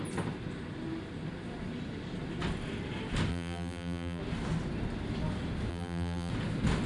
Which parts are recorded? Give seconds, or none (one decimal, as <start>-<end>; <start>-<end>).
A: 0.0-3.3; 4.2-5.7; 6.3-6.9